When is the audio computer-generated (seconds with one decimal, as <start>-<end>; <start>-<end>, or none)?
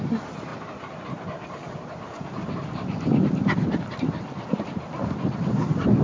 0.0-0.5; 1.6-6.0